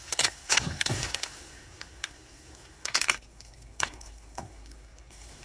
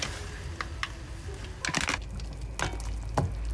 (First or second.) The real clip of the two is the second